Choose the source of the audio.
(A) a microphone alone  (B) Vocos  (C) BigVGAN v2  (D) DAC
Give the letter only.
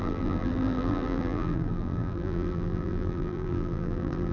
C